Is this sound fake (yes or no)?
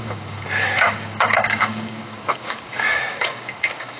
yes